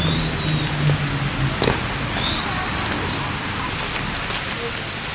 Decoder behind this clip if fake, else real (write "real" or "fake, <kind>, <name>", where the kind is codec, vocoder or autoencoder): real